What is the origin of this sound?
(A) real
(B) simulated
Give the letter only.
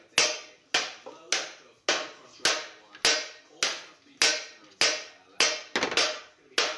A